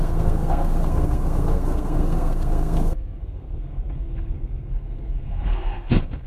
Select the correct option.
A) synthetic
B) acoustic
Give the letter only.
A